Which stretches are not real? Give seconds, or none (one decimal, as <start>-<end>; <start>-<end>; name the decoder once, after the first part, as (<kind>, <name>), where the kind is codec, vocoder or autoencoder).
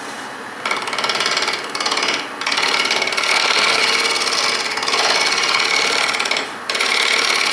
3.3-3.8 (codec, SNAC)